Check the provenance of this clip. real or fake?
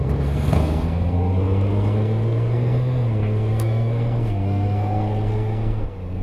fake